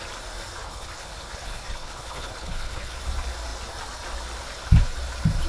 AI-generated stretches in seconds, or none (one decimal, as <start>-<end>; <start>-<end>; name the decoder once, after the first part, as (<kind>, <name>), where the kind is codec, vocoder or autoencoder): 0.6-3.0 (codec, HILCodec)